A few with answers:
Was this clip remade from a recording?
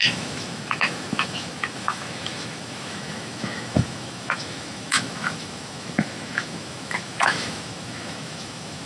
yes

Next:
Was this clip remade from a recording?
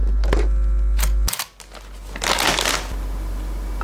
no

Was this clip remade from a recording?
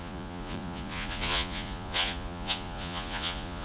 yes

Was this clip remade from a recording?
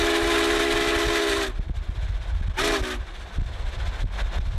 no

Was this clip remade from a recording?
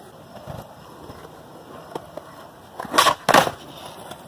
no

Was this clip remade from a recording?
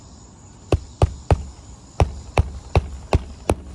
no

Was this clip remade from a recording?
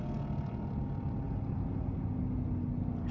no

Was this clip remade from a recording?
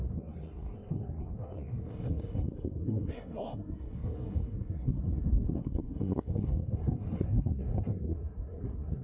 yes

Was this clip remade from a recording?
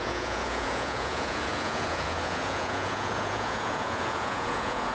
yes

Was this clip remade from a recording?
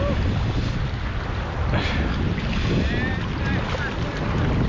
no